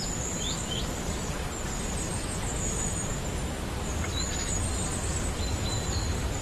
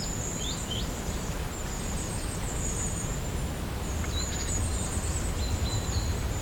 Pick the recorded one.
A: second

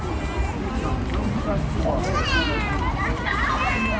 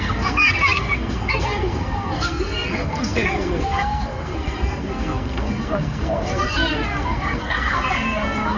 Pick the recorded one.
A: first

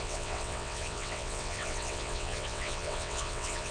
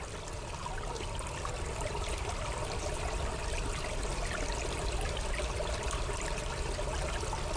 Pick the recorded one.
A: second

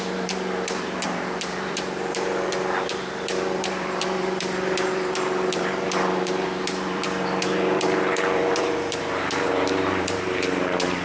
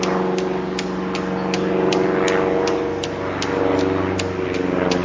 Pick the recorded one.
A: second